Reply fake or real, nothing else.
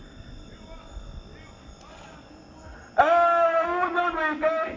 real